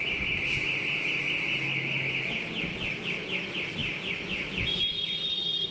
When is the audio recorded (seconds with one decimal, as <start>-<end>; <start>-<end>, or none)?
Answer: 0.0-5.7